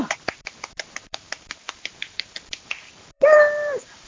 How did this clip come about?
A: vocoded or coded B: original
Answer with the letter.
A